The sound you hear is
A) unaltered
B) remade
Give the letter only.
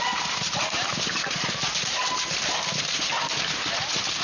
A